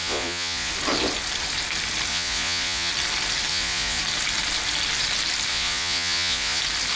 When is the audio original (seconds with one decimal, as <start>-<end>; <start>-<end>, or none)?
0.7-2.1; 2.9-3.5; 4.0-5.5; 6.6-7.0